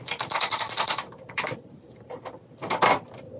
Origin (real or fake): fake